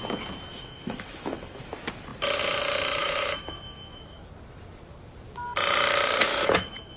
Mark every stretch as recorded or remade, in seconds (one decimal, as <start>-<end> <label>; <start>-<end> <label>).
0.0-0.5 recorded; 0.5-1.7 remade; 1.7-3.0 recorded; 3.0-4.3 remade; 4.3-6.2 recorded; 6.2-7.0 remade